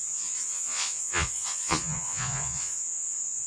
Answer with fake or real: fake